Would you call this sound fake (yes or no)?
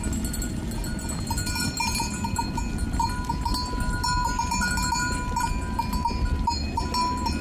no